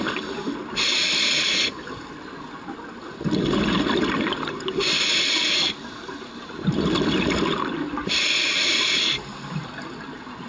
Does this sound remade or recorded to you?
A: recorded